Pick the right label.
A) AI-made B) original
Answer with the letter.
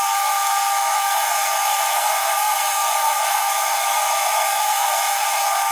A